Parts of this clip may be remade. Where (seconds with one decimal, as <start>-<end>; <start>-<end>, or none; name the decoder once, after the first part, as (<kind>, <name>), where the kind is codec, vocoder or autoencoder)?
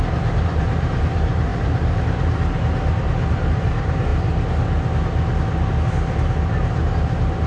0.0-4.1 (vocoder, BigVGAN v2)